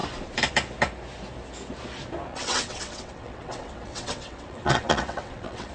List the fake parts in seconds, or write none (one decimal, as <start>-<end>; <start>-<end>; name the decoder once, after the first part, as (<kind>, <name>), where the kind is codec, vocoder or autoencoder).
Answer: 2.3-5.7 (vocoder, WaveNeXt)